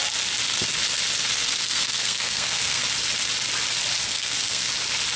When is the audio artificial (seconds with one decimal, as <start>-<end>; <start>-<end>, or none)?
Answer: 1.3-2.8; 4.1-4.7